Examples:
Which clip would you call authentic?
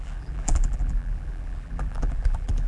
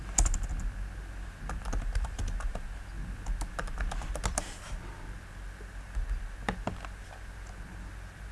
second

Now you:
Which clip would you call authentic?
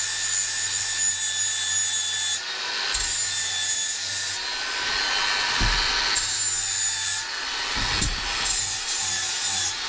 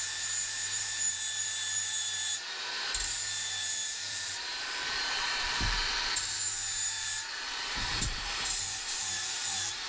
first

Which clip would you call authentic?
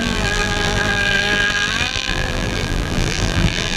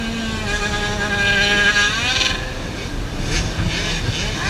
second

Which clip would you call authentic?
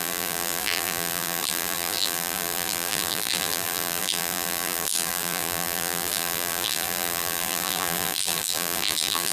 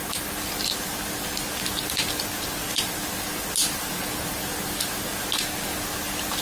second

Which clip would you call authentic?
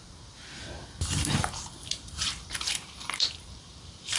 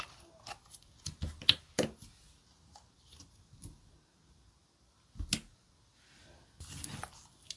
second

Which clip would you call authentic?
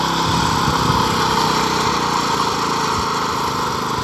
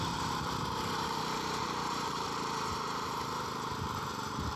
first